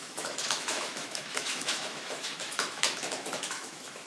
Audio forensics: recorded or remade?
remade